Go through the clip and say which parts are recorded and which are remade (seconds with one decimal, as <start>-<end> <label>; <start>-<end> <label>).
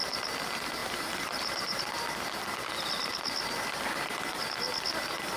0.0-0.8 recorded; 0.8-1.8 remade; 1.8-5.4 recorded